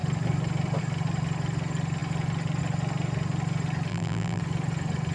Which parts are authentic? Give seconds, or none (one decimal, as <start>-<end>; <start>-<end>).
0.0-3.9; 4.4-5.1